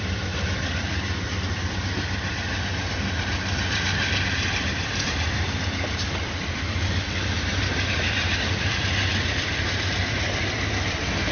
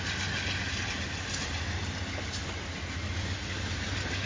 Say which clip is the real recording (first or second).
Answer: second